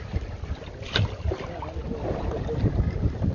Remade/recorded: recorded